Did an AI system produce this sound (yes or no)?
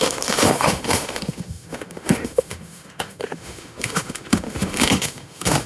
yes